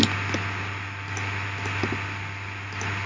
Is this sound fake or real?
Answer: real